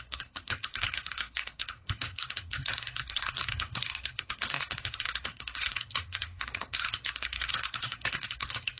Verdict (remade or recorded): remade